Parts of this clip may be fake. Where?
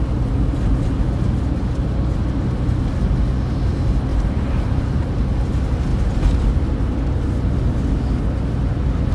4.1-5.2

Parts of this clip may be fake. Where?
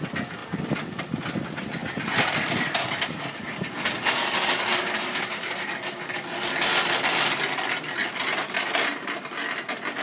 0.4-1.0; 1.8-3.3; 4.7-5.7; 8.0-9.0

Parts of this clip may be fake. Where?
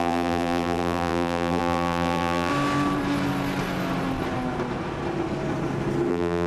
0.0-2.5; 6.1-6.5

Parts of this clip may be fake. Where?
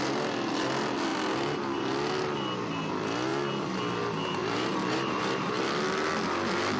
4.4-5.6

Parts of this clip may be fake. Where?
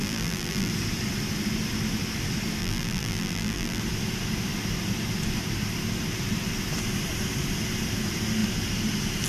0.0-0.7; 2.6-3.8